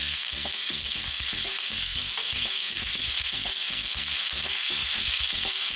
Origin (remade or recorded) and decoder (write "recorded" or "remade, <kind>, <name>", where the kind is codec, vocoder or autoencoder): remade, codec, SNAC